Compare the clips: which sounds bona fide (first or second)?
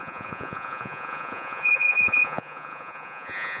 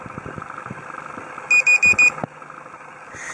second